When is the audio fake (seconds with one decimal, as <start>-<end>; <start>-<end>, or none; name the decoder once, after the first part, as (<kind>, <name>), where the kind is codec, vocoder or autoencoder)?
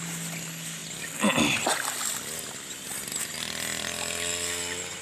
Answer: none